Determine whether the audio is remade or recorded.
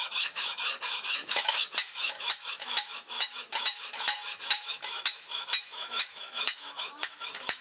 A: remade